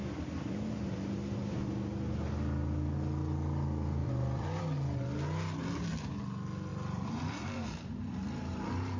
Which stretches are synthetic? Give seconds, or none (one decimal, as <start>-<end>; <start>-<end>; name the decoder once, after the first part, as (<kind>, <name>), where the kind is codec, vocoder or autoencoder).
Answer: 4.0-4.6 (vocoder, BigVGAN v2); 6.7-8.5